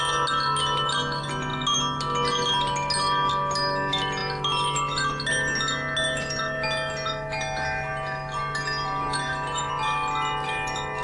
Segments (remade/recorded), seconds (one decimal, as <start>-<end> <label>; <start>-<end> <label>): 0.0-11.0 recorded